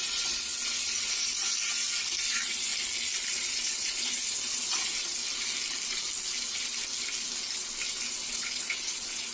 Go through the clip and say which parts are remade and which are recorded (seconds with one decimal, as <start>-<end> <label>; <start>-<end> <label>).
0.0-1.5 remade; 1.5-2.2 recorded; 2.2-2.7 remade; 2.7-3.3 recorded; 3.3-5.2 remade; 5.2-8.2 recorded; 8.2-9.3 remade

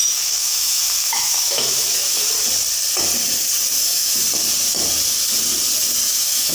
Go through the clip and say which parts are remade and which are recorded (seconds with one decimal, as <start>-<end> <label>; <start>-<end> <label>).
0.0-2.2 remade; 2.2-3.8 recorded; 3.8-4.3 remade; 4.3-6.1 recorded; 6.1-6.5 remade

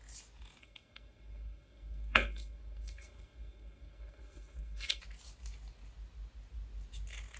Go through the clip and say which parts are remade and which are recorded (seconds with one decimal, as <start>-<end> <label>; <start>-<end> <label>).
0.0-0.6 recorded; 0.6-5.0 remade; 5.0-7.4 recorded

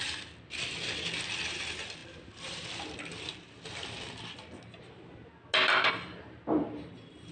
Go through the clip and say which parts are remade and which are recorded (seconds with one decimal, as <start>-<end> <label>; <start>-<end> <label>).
0.0-7.3 recorded

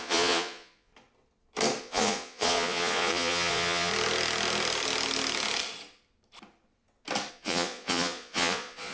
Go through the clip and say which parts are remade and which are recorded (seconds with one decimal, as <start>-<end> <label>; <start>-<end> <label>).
0.0-0.9 remade; 0.9-1.8 recorded; 1.8-3.9 remade; 3.9-7.3 recorded; 7.3-8.9 remade

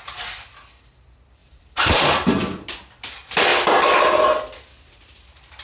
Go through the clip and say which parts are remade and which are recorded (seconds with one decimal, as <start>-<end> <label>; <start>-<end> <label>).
0.0-1.4 recorded; 1.4-2.0 remade; 2.0-5.6 recorded

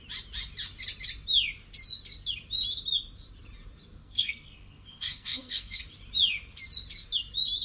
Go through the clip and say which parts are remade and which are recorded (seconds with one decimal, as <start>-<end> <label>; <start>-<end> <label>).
0.0-4.0 recorded; 4.0-5.8 remade; 5.8-7.6 recorded

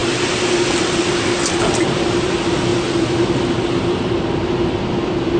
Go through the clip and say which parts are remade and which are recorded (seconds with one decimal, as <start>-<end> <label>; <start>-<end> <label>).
0.0-5.4 recorded